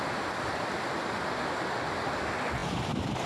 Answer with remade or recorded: recorded